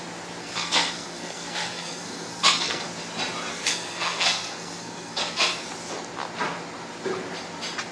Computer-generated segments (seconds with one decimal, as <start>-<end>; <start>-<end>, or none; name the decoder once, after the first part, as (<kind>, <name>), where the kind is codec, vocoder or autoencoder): 0.4-2.9 (codec, SNAC); 3.5-5.7